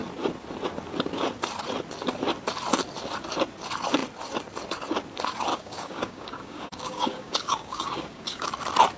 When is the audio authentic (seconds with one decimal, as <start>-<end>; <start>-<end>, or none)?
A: 0.0-5.5; 8.5-9.0